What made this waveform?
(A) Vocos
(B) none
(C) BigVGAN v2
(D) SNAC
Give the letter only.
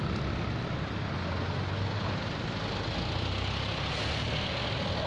B